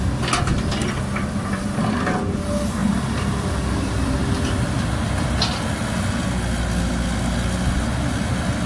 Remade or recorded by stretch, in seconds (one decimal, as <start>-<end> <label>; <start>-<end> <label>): 0.0-2.8 recorded; 2.8-6.2 remade; 6.2-8.7 recorded